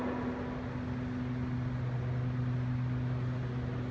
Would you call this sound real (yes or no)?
yes